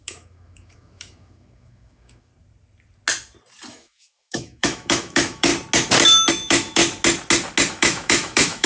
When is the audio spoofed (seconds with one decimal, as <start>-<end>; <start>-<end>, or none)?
0.0-2.3; 3.7-5.5; 6.3-6.8; 7.7-8.7